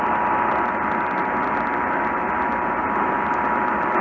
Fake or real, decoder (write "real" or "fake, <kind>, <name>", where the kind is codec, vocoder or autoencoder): real